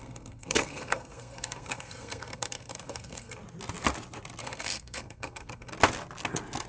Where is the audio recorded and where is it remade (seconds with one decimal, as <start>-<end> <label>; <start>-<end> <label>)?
0.0-3.4 remade; 3.4-4.4 recorded; 4.4-5.7 remade; 5.7-6.7 recorded

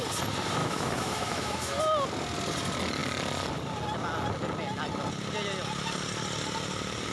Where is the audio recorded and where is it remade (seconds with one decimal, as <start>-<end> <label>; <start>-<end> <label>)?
0.0-0.6 recorded; 0.6-1.8 remade; 1.8-7.1 recorded

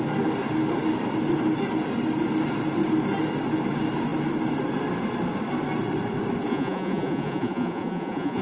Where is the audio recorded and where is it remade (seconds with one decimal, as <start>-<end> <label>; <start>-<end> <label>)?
0.0-6.5 recorded; 6.5-8.4 remade

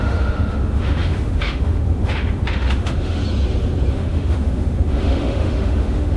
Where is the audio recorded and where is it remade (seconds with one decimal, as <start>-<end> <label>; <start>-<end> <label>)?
0.0-3.2 remade; 3.2-3.9 recorded; 3.9-6.2 remade